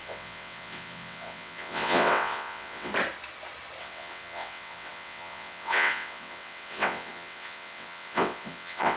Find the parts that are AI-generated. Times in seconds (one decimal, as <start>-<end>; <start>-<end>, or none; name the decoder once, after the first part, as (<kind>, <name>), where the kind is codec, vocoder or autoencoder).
0.0-2.9 (vocoder, WaveNeXt); 3.8-9.0